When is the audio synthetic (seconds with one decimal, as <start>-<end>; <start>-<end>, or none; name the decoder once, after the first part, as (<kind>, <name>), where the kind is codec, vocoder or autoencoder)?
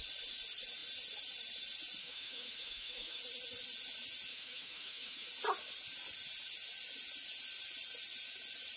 2.0-3.2 (autoencoder, DAC-VAE); 4.3-5.3